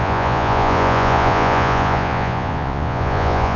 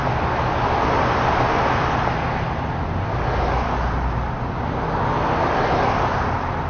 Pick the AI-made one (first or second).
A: first